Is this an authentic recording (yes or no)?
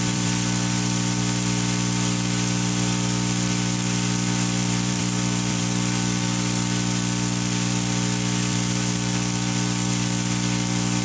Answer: no